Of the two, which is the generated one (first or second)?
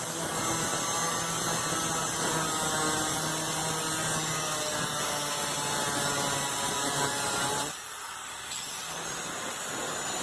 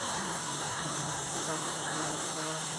second